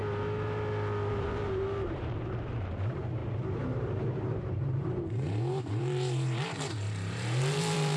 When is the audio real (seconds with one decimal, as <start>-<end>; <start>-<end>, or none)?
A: 0.0-1.1

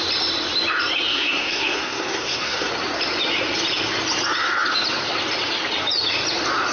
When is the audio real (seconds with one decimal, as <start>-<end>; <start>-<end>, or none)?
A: 0.0-1.1; 2.7-6.7

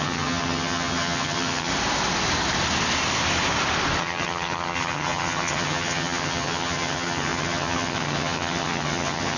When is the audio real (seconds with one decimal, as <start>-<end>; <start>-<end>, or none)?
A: 1.7-4.0